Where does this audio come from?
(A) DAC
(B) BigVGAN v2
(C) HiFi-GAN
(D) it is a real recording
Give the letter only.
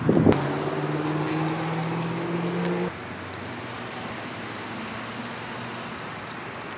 D